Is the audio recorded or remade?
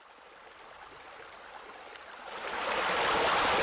recorded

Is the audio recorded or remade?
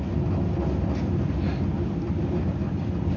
recorded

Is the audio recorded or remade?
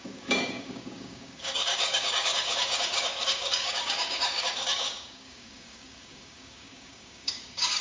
remade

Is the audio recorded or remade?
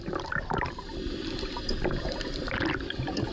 recorded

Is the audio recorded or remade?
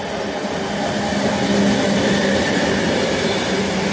recorded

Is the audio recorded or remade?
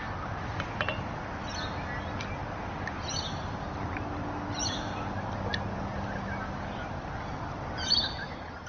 recorded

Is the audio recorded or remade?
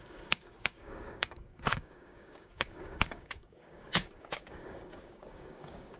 remade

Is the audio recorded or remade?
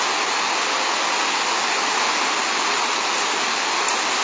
recorded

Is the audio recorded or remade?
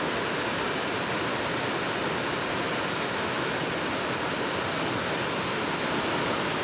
recorded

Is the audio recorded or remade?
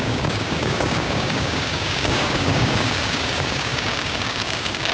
remade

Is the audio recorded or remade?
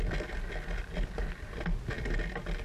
recorded